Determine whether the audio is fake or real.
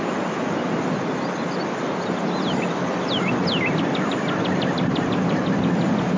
real